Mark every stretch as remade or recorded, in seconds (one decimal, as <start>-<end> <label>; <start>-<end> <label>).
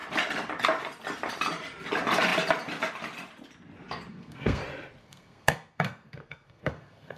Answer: 0.0-4.1 recorded; 4.1-4.6 remade; 4.6-5.0 recorded; 5.0-7.2 remade